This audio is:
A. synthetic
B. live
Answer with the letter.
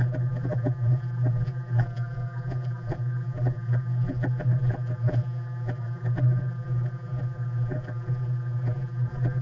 A